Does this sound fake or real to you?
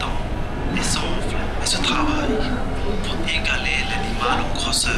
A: real